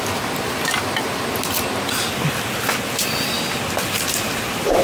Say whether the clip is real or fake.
real